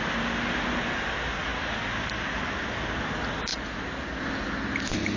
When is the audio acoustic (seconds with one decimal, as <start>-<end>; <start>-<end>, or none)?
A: 0.0-5.2